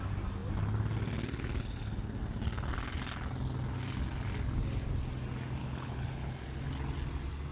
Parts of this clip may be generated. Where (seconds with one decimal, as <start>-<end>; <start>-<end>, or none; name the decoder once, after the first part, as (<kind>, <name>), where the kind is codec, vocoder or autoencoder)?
5.6-6.3 (codec, HILCodec)